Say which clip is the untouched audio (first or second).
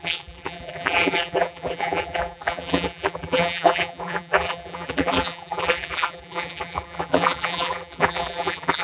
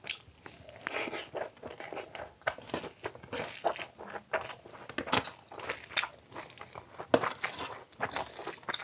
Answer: second